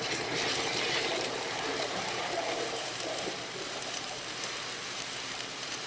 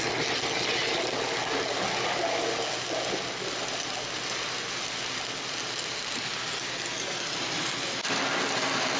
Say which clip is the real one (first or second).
second